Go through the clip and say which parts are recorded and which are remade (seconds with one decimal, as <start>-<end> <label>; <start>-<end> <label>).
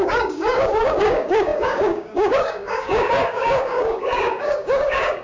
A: 0.0-5.2 remade